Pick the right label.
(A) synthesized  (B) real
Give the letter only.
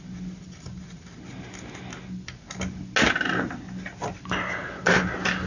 B